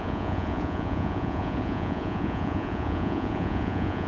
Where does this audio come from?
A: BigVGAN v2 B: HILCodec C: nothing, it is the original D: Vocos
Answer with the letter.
D